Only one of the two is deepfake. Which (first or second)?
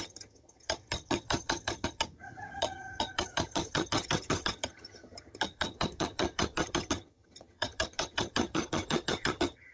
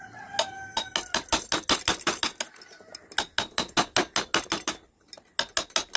first